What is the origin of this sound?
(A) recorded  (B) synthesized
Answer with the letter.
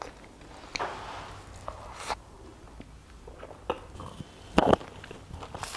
A